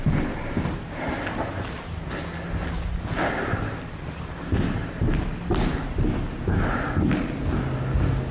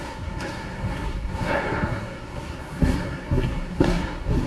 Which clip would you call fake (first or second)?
second